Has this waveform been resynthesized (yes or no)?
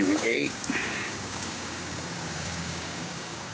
yes